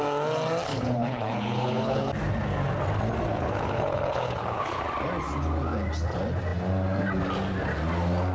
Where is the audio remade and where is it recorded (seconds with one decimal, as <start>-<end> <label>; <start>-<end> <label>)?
0.0-0.7 recorded; 0.7-2.1 remade; 2.1-3.3 recorded; 3.3-4.8 remade; 4.8-8.3 recorded

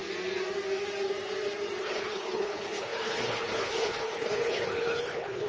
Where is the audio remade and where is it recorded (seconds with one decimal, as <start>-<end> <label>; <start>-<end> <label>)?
0.0-1.8 recorded; 1.8-5.5 remade

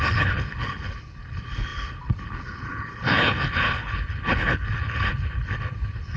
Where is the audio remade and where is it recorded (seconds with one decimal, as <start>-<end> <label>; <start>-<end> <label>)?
0.0-6.2 remade

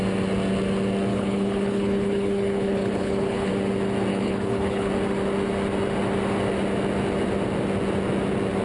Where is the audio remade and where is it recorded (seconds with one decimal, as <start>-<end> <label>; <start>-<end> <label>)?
0.0-1.1 recorded; 1.1-3.5 remade; 3.5-4.1 recorded; 4.1-4.9 remade; 4.9-8.6 recorded

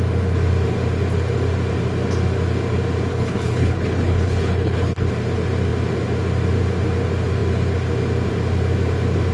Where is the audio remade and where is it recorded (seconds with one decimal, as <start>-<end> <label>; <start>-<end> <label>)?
0.0-3.1 recorded; 3.1-5.1 remade; 5.1-9.3 recorded

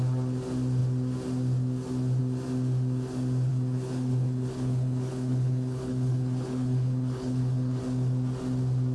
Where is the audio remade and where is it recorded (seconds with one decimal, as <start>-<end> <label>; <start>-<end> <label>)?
0.0-3.5 recorded; 3.5-7.8 remade; 7.8-8.9 recorded

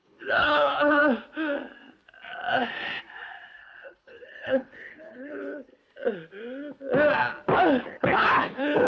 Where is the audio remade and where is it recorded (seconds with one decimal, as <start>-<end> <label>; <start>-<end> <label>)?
0.0-1.0 remade; 1.0-3.6 recorded; 3.6-5.8 remade; 5.8-7.9 recorded; 7.9-8.9 remade